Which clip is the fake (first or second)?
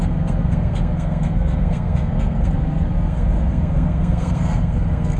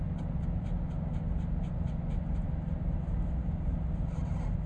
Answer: first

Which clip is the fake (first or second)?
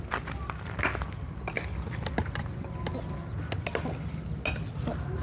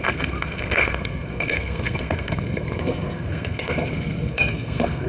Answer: second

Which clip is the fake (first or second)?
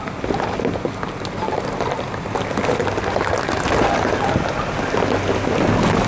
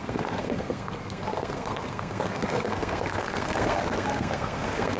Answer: second